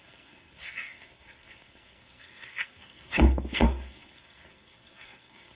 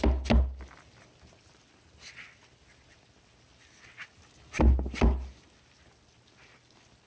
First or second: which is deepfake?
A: first